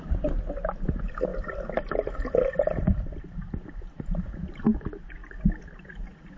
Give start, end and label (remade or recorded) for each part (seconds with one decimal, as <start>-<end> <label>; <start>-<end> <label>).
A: 0.0-6.4 recorded